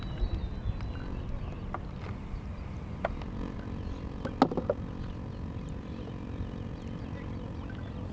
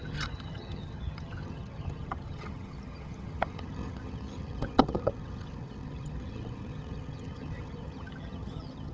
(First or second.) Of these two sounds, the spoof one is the second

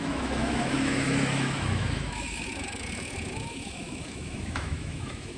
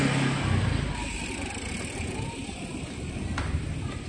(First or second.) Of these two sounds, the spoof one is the first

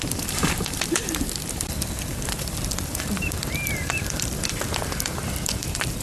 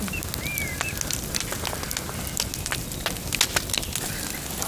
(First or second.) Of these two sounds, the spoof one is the first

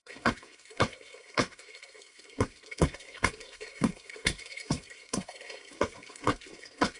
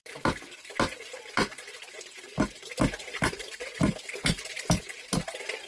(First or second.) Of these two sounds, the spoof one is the first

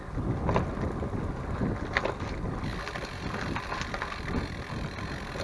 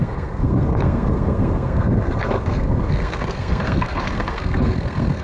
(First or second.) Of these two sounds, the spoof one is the second